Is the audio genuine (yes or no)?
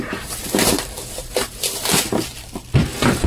no